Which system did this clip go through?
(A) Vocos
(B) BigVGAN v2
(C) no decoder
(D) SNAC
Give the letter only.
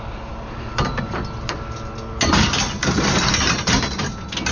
C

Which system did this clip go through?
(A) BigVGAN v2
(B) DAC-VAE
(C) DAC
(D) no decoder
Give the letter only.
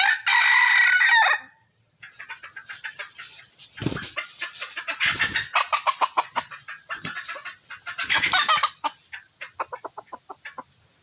D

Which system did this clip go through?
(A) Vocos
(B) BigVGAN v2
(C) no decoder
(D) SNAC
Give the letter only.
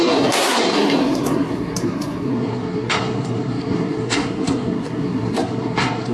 D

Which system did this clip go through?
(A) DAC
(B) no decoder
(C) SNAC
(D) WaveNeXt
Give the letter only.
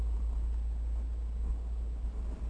B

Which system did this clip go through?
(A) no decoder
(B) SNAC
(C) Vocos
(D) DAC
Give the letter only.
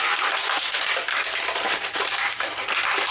A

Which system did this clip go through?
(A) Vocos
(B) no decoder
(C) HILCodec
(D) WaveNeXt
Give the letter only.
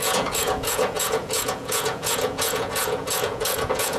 A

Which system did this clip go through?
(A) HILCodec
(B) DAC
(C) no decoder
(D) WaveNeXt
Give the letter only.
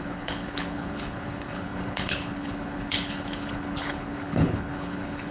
A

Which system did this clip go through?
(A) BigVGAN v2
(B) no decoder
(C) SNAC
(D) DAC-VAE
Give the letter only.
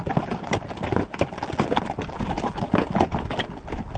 B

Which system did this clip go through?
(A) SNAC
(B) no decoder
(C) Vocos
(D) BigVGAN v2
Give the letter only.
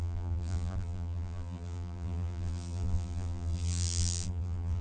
D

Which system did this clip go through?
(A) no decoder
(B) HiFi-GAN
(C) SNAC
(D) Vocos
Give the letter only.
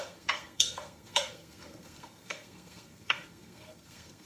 C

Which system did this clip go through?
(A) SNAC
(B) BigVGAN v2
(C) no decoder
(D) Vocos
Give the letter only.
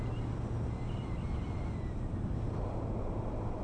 C